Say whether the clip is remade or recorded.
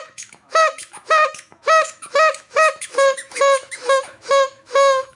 remade